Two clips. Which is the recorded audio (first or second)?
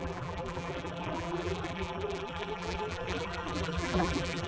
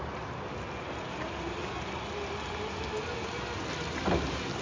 second